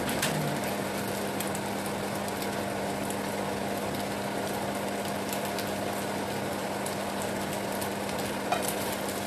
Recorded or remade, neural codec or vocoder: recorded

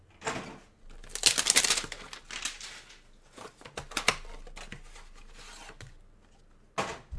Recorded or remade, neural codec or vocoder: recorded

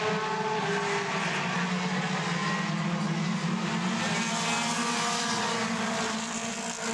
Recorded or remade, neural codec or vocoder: recorded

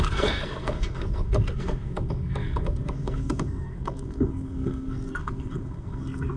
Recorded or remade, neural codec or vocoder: remade, codec, SNAC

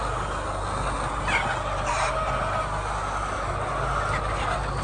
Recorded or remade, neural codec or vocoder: recorded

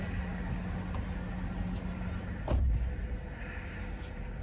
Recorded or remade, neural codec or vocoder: recorded